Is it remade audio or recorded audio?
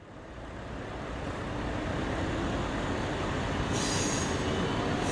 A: recorded